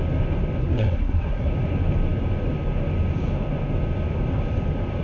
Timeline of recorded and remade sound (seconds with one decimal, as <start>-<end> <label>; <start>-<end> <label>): 0.0-0.6 recorded; 0.6-1.5 remade; 1.5-5.0 recorded